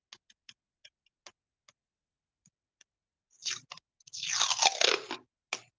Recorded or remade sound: recorded